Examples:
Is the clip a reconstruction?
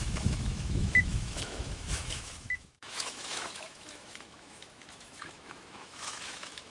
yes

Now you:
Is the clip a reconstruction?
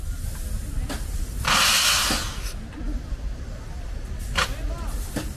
no